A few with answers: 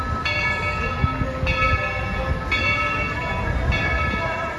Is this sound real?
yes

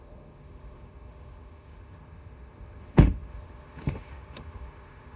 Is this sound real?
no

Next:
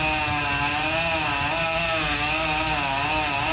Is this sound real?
yes